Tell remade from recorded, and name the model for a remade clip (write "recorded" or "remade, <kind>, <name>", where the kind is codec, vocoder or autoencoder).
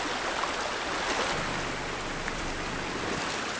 recorded